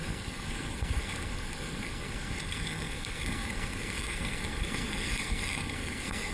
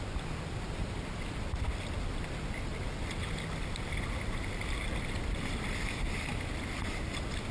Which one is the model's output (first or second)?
first